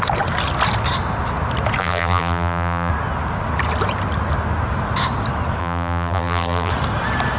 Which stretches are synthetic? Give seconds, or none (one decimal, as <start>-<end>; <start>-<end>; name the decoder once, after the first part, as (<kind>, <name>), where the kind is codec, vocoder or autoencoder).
1.8-2.9 (vocoder, BigVGAN v2); 5.6-6.7